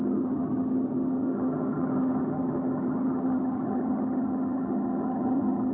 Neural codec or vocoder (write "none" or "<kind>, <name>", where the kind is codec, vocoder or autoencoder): vocoder, HiFi-GAN